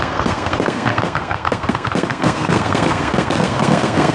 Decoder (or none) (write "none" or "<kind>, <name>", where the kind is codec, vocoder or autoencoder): codec, SNAC